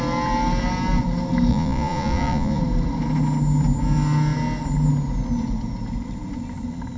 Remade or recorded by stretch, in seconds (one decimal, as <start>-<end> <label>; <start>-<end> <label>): 0.0-1.5 recorded; 1.5-2.6 remade; 2.6-7.0 recorded